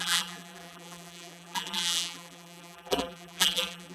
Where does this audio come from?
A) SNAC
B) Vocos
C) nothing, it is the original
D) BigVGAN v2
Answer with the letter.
D